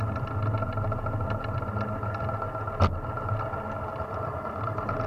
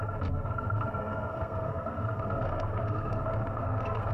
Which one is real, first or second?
first